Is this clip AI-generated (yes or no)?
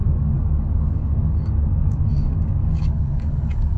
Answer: yes